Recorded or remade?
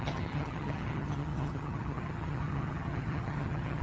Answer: remade